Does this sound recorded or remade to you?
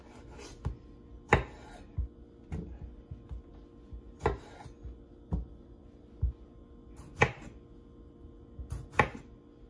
recorded